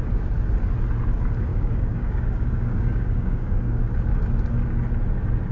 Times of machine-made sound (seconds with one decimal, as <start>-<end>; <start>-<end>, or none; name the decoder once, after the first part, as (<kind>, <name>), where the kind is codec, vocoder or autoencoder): 1.5-3.8 (codec, DAC)